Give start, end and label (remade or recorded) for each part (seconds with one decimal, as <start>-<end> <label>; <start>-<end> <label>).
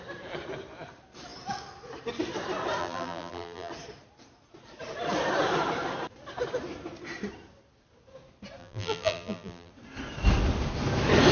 0.0-2.8 recorded; 2.8-3.7 remade; 3.7-8.6 recorded; 8.6-9.7 remade; 9.7-11.3 recorded